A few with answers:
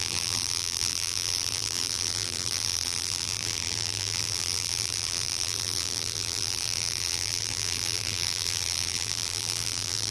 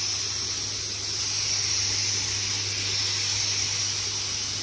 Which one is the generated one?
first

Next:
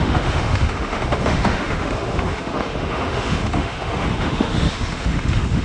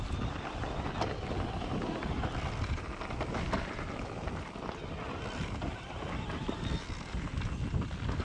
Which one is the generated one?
first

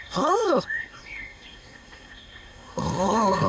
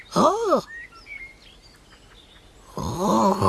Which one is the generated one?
first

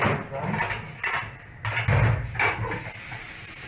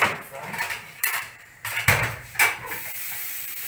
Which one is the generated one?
second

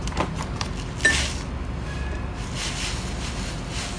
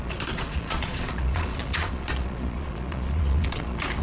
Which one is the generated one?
second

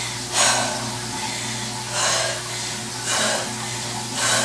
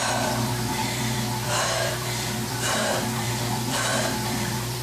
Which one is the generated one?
second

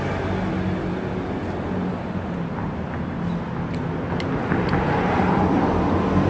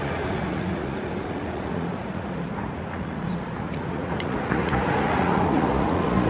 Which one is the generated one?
second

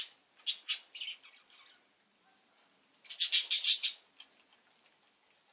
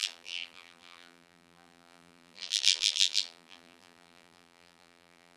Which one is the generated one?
second